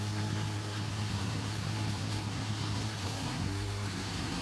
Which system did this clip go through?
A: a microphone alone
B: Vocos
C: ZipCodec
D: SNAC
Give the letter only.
D